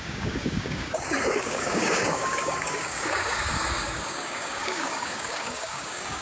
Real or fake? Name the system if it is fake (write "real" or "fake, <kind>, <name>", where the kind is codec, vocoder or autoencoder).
fake, codec, DAC